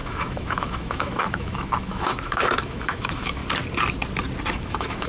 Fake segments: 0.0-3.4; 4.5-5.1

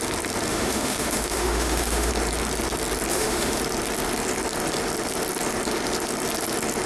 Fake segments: 0.5-2.1; 3.1-3.6

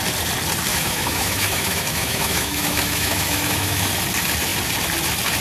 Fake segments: 0.7-3.9

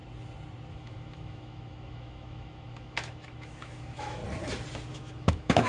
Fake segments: 0.7-4.2; 4.9-5.7